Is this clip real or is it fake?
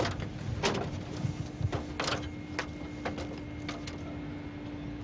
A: real